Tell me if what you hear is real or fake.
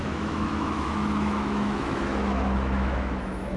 fake